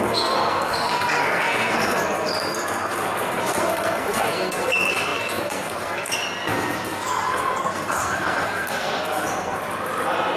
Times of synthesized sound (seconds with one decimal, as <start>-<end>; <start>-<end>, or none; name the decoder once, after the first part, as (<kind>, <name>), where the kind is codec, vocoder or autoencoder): 0.0-9.6 (codec, SNAC)